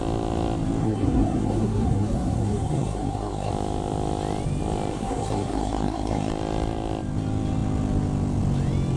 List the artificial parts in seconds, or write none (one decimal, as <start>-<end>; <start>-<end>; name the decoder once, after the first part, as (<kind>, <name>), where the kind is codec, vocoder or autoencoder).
0.8-3.5 (codec, SNAC); 4.9-6.3